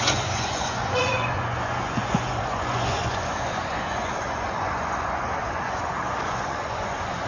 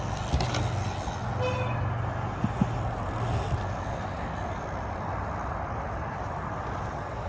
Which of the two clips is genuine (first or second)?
second